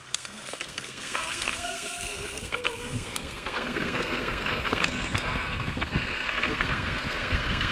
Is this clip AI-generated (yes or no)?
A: yes